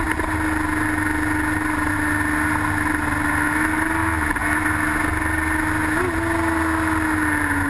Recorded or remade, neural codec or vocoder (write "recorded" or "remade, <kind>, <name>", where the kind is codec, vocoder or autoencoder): recorded